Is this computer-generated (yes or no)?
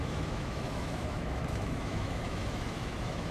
yes